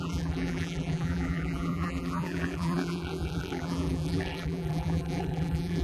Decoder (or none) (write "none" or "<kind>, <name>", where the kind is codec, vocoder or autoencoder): vocoder, BigVGAN v2